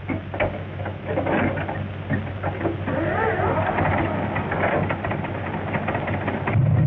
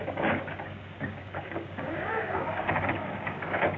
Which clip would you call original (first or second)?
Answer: first